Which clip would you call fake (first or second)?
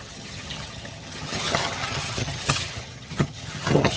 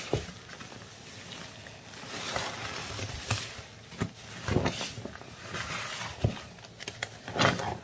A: first